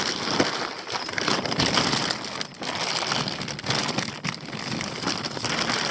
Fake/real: real